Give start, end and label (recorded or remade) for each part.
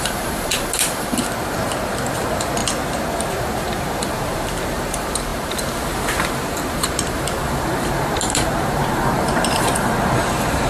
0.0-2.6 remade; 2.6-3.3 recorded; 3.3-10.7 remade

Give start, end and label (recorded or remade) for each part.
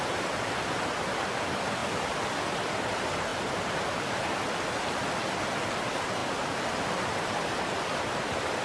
0.0-1.8 recorded; 1.8-2.3 remade; 2.3-3.3 recorded; 3.3-4.7 remade; 4.7-8.6 recorded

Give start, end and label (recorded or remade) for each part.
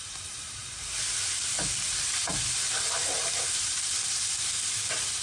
0.0-5.2 recorded